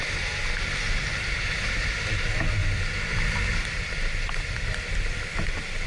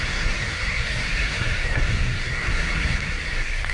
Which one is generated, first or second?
second